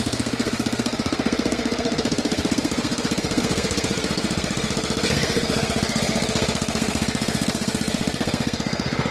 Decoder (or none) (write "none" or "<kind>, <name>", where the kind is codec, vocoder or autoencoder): codec, SNAC